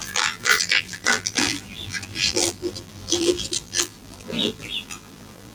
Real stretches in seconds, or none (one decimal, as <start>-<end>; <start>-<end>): none